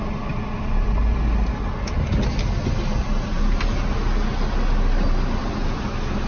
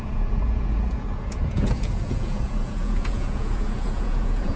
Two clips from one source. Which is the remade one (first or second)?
second